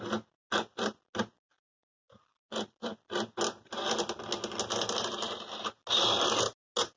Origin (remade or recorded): recorded